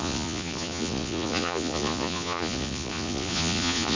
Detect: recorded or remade remade